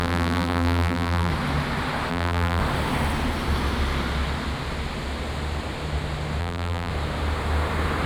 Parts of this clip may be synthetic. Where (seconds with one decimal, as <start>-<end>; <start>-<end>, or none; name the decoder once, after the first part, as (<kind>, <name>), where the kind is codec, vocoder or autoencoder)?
0.0-1.3 (vocoder, BigVGAN v2); 2.1-2.6; 6.4-6.9